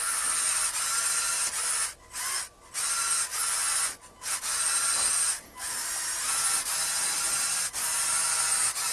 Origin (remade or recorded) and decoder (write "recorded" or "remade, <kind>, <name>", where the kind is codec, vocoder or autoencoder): recorded